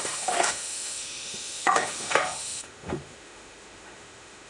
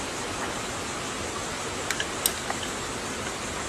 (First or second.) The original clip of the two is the second